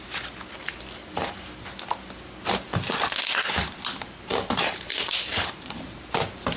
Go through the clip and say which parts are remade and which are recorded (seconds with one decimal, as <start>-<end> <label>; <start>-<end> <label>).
0.0-1.0 recorded; 1.0-1.5 remade; 1.5-4.3 recorded; 4.3-6.0 remade; 6.0-6.6 recorded